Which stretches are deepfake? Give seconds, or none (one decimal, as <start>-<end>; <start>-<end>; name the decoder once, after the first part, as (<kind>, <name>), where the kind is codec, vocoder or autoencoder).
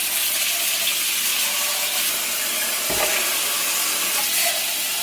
none